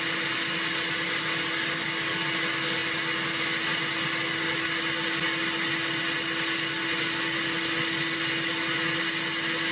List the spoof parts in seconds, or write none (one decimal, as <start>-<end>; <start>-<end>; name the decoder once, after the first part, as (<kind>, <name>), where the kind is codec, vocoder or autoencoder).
none